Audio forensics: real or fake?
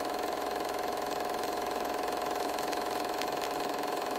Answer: fake